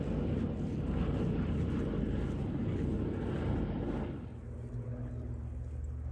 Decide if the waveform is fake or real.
real